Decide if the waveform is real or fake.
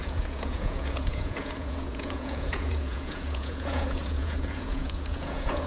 fake